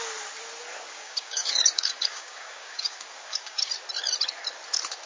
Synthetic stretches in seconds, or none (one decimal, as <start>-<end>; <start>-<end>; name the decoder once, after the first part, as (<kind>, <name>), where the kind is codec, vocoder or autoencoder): 0.9-3.7 (codec, DAC)